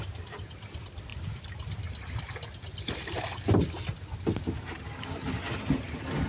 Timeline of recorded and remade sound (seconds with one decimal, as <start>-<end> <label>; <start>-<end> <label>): 0.0-6.3 recorded